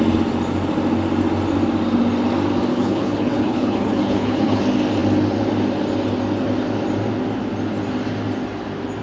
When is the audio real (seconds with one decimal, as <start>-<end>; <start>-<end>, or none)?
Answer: 0.0-2.7; 4.6-9.0